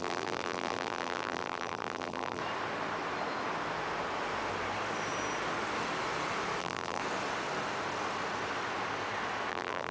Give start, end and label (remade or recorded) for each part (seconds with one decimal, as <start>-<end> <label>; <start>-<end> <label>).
0.0-2.4 remade; 2.4-6.6 recorded; 6.6-7.0 remade; 7.0-9.5 recorded; 9.5-9.9 remade